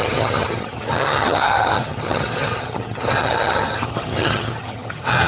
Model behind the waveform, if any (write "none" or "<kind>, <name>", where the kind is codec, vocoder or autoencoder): vocoder, HiFi-GAN